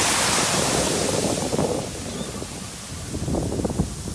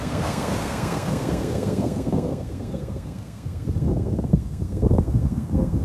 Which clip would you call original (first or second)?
first